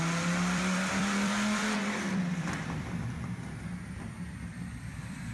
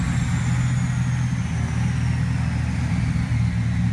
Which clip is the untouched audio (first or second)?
second